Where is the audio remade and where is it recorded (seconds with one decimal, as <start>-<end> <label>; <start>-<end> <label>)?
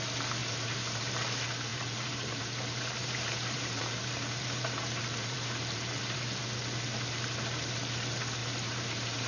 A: 0.0-0.4 recorded; 0.4-1.1 remade; 1.1-1.7 recorded; 1.7-6.4 remade; 6.4-8.4 recorded; 8.4-9.3 remade